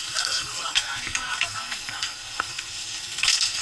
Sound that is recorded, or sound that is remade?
remade